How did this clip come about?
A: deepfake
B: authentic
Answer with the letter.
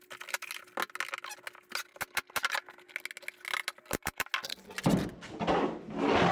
B